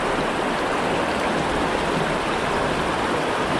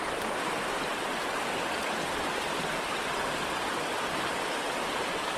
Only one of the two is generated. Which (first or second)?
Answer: second